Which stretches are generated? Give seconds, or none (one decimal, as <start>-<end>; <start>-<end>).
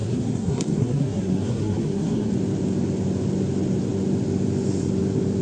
0.0-2.3